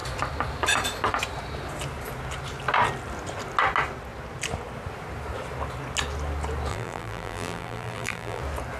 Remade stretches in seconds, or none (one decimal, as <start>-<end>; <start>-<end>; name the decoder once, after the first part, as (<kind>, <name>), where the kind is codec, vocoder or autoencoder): 6.7-8.4 (vocoder, BigVGAN v2)